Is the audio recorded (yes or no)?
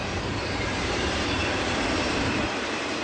no